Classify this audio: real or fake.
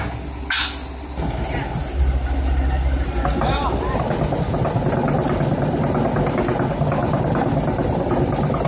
real